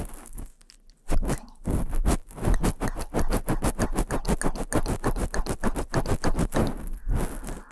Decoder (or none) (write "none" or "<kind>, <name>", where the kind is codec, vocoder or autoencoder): none